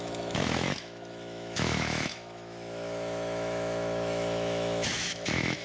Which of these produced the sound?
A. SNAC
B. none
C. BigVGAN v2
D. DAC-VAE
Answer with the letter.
D